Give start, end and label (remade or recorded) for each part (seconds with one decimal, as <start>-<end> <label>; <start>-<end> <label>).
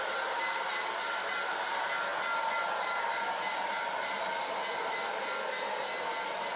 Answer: 0.0-6.6 recorded